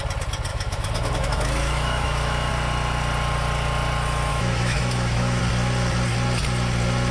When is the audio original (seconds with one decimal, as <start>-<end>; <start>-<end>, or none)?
0.0-0.5; 2.5-4.3; 5.4-7.1